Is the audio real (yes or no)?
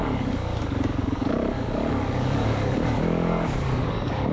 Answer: no